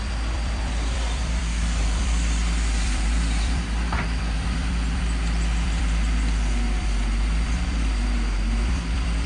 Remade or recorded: remade